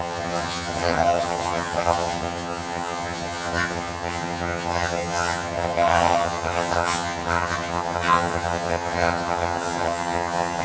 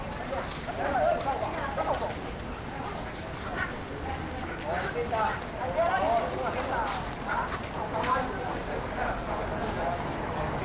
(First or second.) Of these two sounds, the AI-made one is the first